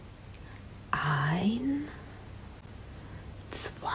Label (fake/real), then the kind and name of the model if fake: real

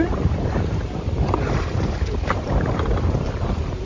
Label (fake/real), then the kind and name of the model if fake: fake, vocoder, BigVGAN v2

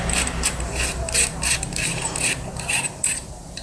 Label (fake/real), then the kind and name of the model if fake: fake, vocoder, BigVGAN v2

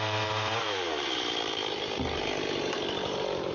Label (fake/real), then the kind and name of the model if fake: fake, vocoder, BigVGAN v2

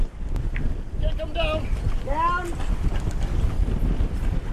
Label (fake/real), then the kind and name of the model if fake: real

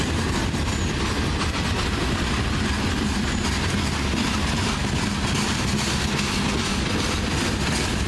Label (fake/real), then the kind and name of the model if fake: real